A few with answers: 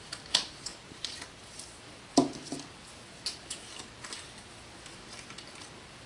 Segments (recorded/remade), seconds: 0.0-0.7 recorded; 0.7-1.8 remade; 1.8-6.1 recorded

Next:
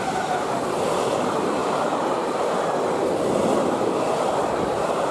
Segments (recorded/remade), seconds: 0.0-1.6 recorded; 1.6-2.3 remade; 2.3-5.1 recorded

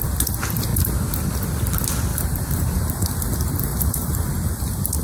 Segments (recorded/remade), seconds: 0.0-2.1 recorded; 2.1-2.9 remade; 2.9-3.7 recorded; 3.7-4.3 remade; 4.3-5.0 recorded

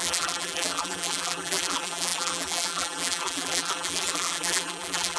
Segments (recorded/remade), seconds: 0.0-5.2 remade

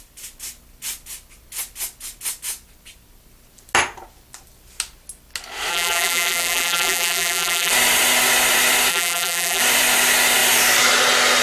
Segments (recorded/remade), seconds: 0.0-5.7 recorded; 5.7-7.7 remade; 7.7-8.9 recorded; 8.9-9.6 remade; 9.6-11.4 recorded

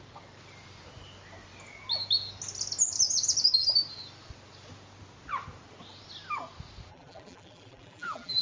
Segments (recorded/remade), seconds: 0.0-6.9 recorded; 6.9-8.4 remade